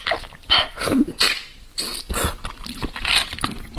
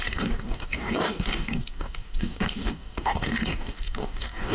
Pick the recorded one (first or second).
first